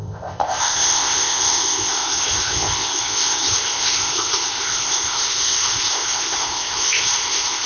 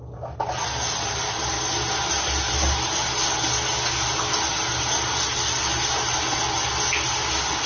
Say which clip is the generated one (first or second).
first